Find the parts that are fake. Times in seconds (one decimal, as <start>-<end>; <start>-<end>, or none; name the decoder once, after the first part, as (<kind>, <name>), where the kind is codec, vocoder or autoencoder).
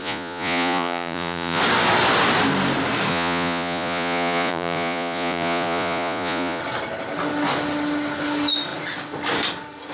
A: 0.0-1.6 (vocoder, Vocos); 3.1-6.6